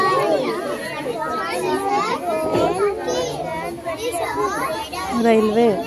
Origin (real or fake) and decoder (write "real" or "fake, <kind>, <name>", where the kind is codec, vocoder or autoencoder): real